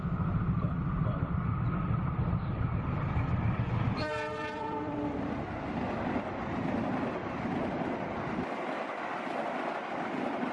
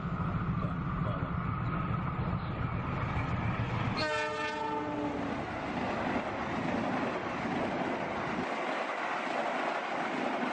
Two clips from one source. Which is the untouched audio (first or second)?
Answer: second